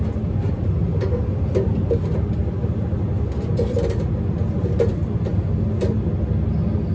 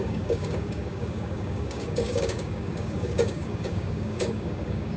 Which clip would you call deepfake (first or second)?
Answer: second